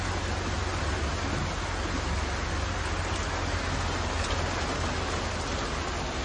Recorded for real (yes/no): yes